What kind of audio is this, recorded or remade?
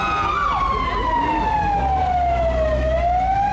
recorded